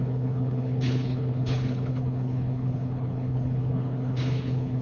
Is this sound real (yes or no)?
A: no